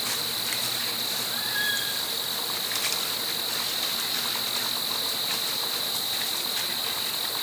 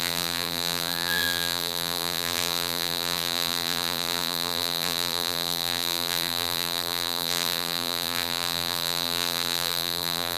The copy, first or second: second